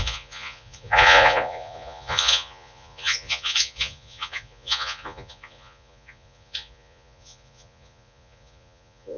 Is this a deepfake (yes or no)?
yes